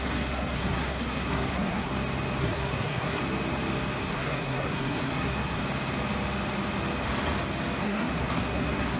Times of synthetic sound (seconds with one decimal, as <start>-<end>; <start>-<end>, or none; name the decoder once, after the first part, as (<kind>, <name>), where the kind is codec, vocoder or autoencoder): 0.0-1.9 (codec, SNAC); 2.4-3.2; 4.0-5.6; 7.8-9.0